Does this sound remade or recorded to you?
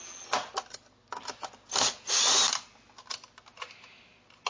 recorded